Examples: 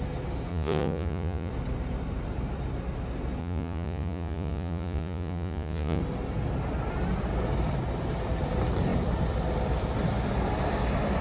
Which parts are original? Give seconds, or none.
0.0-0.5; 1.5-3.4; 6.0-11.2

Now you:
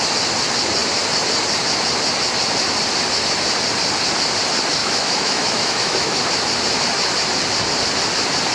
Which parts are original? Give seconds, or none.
0.0-4.8; 6.2-8.5

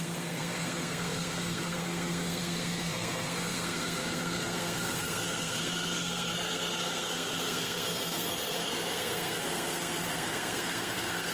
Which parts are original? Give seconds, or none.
none

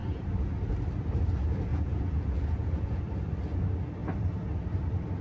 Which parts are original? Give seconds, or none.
0.0-1.7; 3.0-5.2

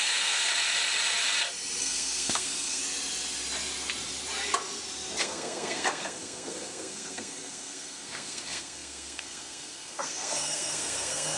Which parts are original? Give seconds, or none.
0.5-1.8; 2.8-5.2

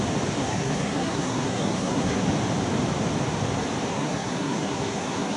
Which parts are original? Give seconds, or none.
0.0-0.4; 2.2-3.9